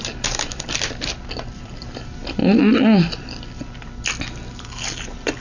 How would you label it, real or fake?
real